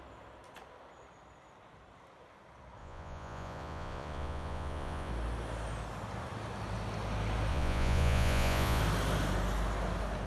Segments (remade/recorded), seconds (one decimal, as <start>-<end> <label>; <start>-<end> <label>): 0.0-2.8 recorded; 2.8-5.1 remade; 5.1-7.5 recorded; 7.5-8.8 remade; 8.8-10.3 recorded